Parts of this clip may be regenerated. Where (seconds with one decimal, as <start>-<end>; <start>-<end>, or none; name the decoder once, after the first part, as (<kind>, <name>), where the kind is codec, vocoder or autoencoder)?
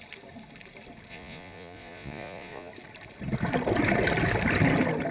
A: 1.1-2.7 (vocoder, Vocos)